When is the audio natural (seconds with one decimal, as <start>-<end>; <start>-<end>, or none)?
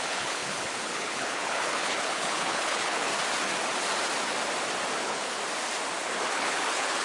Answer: 3.1-5.0; 5.4-6.3